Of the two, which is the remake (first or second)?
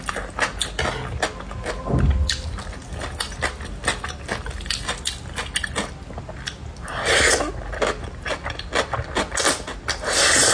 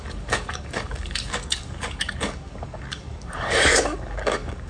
second